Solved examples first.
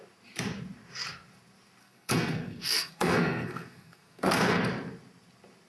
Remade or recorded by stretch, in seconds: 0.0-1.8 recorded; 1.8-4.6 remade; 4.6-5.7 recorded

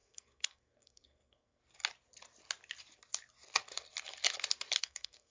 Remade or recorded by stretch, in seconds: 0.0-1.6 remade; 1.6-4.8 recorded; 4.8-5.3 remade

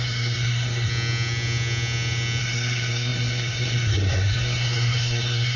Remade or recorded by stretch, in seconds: 0.0-0.9 remade; 0.9-2.4 recorded; 2.4-5.6 remade